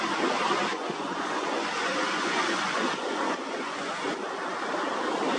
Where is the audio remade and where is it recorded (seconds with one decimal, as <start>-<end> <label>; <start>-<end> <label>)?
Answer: 0.0-0.7 recorded; 0.7-3.9 remade; 3.9-5.4 recorded